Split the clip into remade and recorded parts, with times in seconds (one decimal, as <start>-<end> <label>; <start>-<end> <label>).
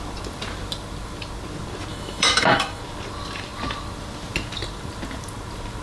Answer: 0.0-1.9 recorded; 1.9-2.8 remade; 2.8-5.8 recorded